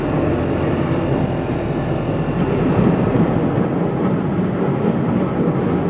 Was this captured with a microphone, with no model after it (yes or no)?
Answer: yes